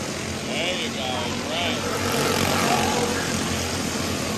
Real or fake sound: real